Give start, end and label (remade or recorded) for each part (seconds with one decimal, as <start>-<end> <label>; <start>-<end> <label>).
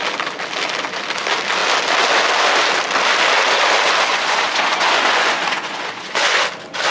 0.0-4.1 recorded; 4.1-6.4 remade; 6.4-6.9 recorded